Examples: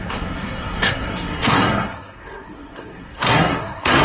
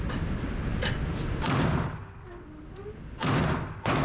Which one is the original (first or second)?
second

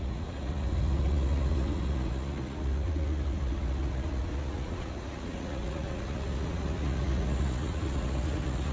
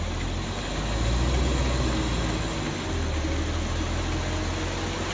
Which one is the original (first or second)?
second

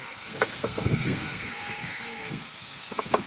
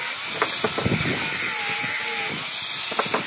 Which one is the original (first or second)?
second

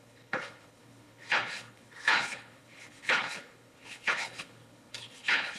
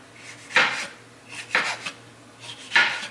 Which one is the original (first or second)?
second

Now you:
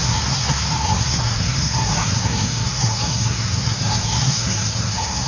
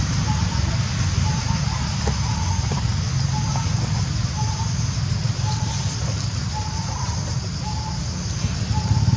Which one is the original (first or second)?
second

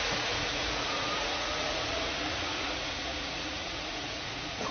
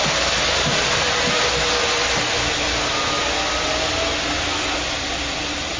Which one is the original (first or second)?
second